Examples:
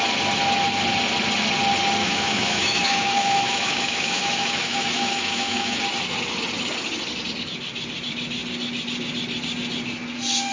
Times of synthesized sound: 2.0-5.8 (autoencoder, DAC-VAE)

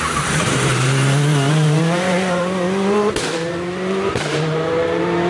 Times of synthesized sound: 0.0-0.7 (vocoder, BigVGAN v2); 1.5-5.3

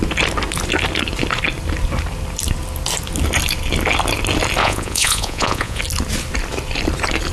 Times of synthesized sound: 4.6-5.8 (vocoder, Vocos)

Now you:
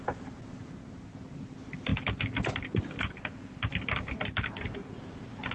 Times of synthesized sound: none